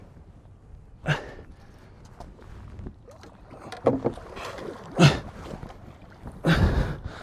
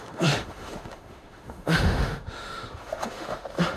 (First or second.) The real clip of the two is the first